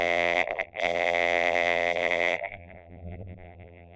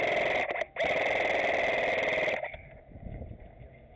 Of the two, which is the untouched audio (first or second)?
second